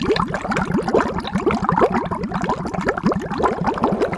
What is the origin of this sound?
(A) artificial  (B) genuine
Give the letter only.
B